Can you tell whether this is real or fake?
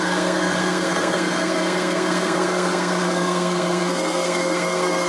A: fake